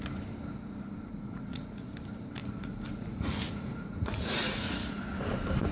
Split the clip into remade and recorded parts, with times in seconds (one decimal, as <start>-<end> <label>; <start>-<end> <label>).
0.0-1.1 recorded; 1.1-1.9 remade; 1.9-2.4 recorded; 2.4-5.0 remade; 5.0-5.7 recorded